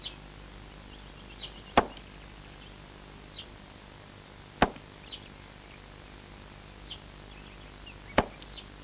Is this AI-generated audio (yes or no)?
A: no